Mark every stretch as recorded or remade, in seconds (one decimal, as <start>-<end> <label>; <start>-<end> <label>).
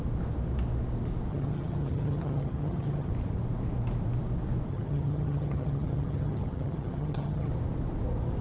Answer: 0.0-1.3 recorded; 1.3-3.1 remade; 3.1-4.7 recorded; 4.7-7.5 remade; 7.5-8.4 recorded